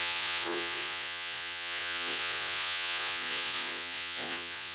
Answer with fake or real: fake